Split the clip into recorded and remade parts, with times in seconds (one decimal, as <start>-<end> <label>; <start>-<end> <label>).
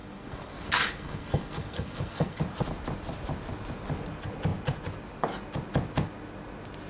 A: 0.0-2.4 remade; 2.4-6.9 recorded